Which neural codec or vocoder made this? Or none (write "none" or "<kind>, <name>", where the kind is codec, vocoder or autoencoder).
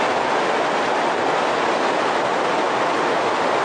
none